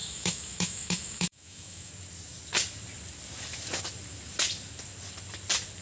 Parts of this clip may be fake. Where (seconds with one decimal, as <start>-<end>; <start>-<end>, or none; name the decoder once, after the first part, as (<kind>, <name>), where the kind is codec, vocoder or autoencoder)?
0.0-1.9 (autoencoder, DAC-VAE)